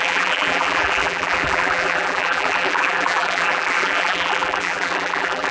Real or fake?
fake